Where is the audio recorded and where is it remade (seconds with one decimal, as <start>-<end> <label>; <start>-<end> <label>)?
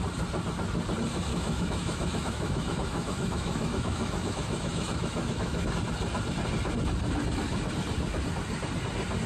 0.0-1.3 recorded; 1.3-5.7 remade; 5.7-9.3 recorded